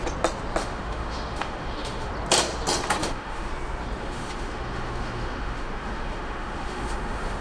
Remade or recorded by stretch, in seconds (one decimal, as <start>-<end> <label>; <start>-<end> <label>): 0.0-0.6 recorded; 0.6-2.1 remade; 2.1-3.0 recorded; 3.0-3.5 remade; 3.5-4.0 recorded; 4.0-7.4 remade